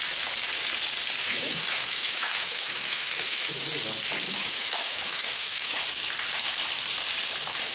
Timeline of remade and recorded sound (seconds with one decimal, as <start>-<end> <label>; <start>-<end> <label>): 0.0-1.2 recorded; 1.2-3.5 remade; 3.5-4.3 recorded; 4.3-5.8 remade; 5.8-7.7 recorded